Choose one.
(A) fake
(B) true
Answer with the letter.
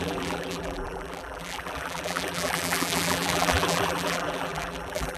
A